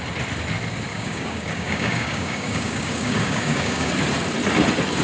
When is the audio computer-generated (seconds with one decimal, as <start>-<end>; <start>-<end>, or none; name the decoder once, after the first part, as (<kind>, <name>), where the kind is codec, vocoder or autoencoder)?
0.9-3.9 (codec, DAC)